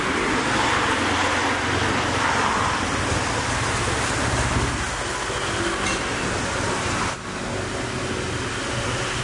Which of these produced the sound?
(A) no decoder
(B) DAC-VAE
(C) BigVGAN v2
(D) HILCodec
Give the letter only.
A